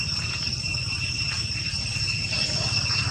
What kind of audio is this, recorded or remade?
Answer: remade